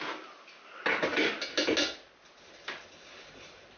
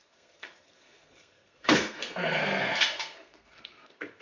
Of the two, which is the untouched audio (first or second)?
first